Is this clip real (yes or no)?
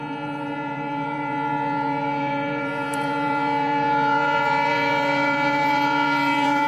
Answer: no